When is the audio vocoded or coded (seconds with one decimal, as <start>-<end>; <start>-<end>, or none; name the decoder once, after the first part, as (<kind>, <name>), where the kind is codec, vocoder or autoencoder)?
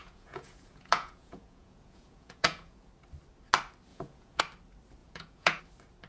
0.0-2.9 (vocoder, Vocos); 3.9-4.4; 5.0-5.6